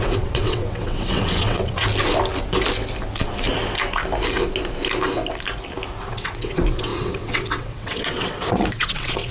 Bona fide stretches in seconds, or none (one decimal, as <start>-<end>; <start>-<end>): 1.8-6.0